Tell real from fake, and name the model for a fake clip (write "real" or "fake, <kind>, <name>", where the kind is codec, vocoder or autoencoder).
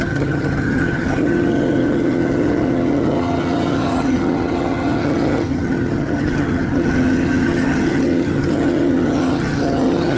fake, vocoder, HiFi-GAN